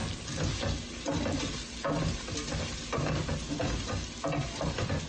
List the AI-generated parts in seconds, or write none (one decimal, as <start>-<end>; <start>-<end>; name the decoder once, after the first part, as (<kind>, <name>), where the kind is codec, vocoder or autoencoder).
none